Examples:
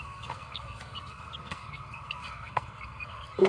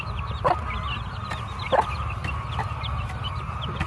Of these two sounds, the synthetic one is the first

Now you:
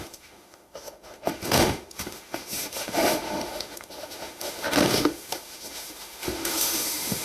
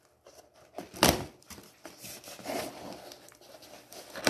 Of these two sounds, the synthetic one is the first